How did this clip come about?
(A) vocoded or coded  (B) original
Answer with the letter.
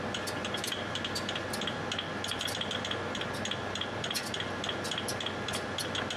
B